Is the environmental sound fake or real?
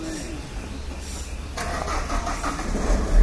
real